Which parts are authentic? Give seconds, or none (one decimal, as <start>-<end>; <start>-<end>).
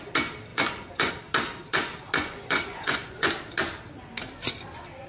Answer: 0.0-0.5; 1.1-2.2; 3.3-5.1